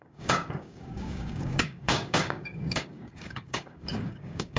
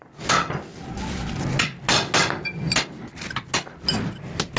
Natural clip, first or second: second